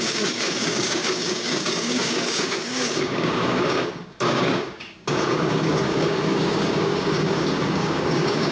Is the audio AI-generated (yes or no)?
yes